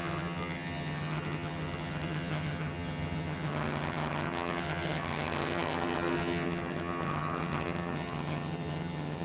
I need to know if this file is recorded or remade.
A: remade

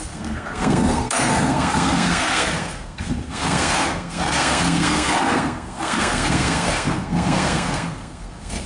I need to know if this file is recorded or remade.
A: remade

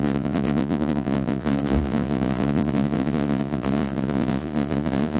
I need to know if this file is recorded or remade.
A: remade